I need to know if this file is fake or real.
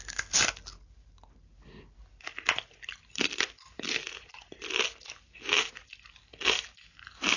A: real